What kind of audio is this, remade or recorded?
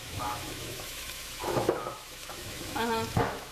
remade